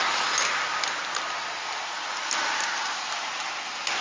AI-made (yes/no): no